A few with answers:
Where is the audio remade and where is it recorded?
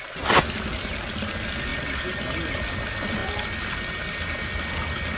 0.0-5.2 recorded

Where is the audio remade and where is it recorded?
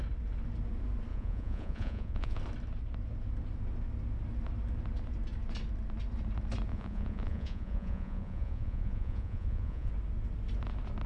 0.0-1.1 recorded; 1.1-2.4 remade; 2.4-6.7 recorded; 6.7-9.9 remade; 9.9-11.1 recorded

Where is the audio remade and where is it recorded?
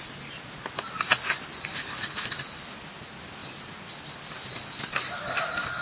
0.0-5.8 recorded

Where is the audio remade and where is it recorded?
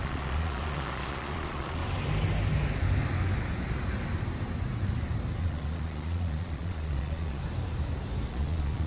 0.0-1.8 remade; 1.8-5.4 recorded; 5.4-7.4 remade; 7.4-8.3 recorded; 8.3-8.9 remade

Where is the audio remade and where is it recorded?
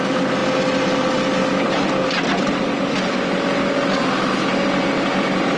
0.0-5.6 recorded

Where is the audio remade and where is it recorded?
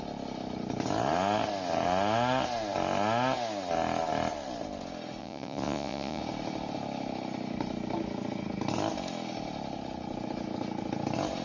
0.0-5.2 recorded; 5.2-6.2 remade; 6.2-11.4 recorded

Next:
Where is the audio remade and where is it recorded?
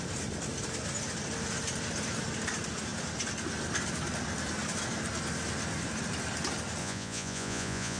0.0-6.8 recorded; 6.8-8.0 remade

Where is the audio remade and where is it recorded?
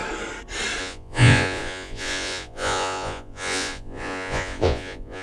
0.0-0.8 recorded; 0.8-5.2 remade